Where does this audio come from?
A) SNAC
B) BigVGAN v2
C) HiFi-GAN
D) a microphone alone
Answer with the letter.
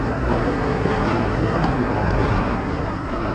A